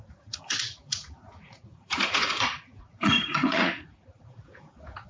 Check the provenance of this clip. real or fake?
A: fake